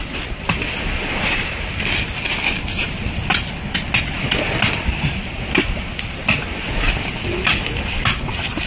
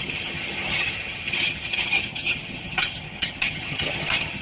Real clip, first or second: first